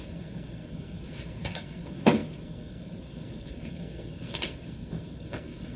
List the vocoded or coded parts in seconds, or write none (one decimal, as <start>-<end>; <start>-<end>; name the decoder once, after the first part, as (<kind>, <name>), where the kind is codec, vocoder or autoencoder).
0.0-5.8 (codec, SNAC)